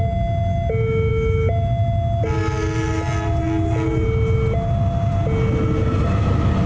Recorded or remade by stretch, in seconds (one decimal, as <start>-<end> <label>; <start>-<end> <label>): 0.0-6.7 recorded